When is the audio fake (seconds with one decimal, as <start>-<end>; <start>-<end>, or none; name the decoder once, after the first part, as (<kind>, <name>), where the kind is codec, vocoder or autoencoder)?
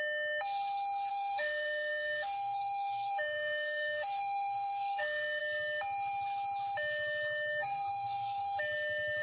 1.1-5.4 (codec, SNAC); 7.6-8.6